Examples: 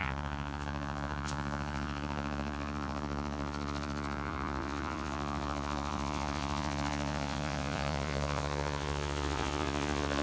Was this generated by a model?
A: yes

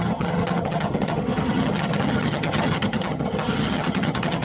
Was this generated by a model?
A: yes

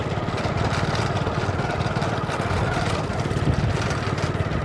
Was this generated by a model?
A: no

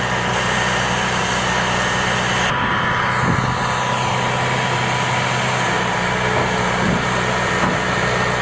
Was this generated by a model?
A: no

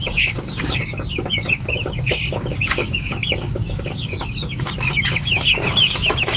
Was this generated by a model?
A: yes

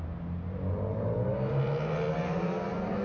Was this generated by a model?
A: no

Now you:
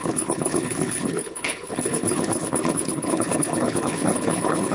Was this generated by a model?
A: yes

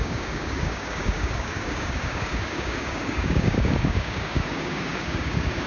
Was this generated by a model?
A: yes